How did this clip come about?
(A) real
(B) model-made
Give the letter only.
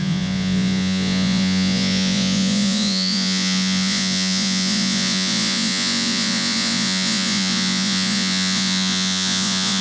B